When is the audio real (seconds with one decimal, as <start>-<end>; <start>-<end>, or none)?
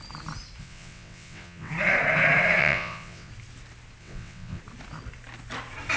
0.0-0.6; 1.7-2.6; 3.3-4.0; 4.6-6.0